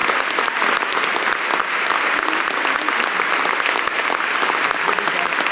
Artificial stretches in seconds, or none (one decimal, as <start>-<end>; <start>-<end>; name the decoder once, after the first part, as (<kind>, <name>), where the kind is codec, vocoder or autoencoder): none